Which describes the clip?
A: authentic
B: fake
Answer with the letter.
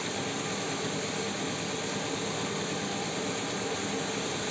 A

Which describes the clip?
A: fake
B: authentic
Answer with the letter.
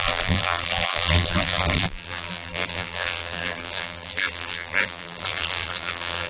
A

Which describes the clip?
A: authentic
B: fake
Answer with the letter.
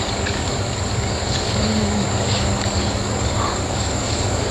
B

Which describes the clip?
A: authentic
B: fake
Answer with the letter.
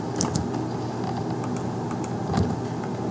A